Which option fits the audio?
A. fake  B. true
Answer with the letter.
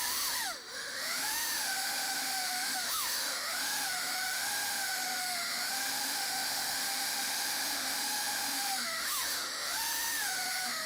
A